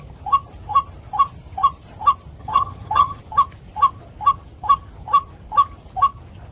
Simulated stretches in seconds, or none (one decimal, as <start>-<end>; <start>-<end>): 2.4-3.2